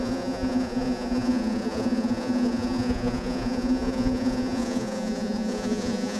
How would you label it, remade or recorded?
remade